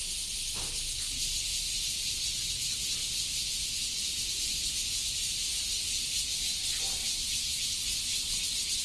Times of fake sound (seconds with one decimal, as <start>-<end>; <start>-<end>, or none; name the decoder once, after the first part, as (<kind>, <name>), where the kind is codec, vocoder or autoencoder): 3.0-4.6 (vocoder, BigVGAN v2); 7.0-8.0